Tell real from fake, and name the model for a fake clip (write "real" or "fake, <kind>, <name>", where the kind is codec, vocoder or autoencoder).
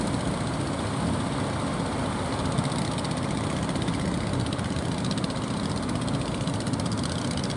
real